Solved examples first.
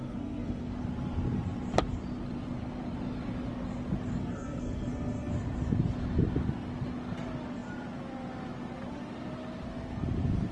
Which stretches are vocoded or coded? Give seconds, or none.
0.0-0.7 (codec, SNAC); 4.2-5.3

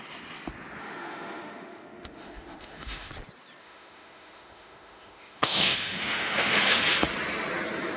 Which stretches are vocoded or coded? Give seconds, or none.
0.8-3.1 (autoencoder, DAC-VAE); 3.6-6.8